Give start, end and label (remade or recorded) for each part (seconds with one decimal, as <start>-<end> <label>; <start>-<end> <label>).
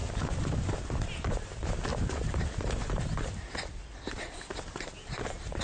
0.0-5.6 recorded